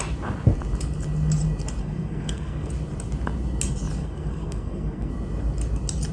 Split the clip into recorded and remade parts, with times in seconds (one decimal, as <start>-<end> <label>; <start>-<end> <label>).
0.0-1.8 recorded; 1.8-2.7 remade; 2.7-4.0 recorded; 4.0-5.1 remade; 5.1-6.1 recorded